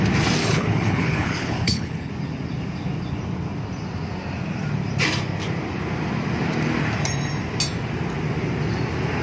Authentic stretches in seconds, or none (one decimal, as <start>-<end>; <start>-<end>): 0.0-0.4; 2.1-9.2